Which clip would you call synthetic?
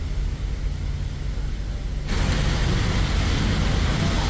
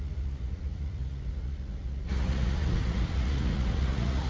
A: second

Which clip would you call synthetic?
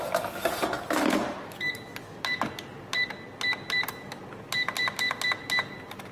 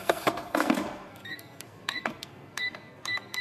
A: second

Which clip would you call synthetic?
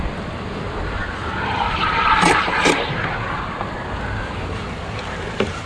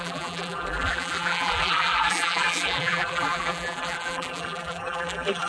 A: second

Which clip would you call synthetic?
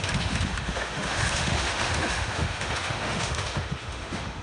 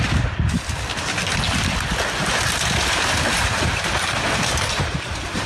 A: first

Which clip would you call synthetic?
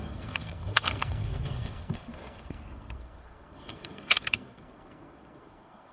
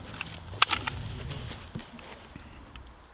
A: first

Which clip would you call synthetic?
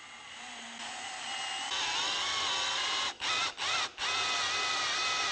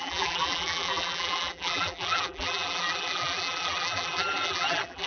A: second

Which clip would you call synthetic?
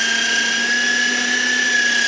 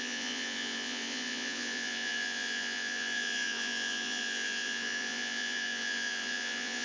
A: second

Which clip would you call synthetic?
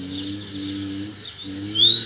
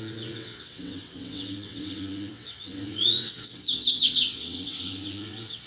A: second